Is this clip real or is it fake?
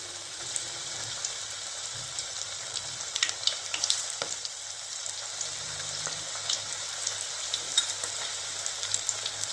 fake